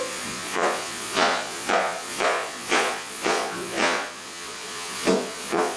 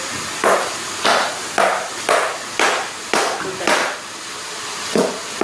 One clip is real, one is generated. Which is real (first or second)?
second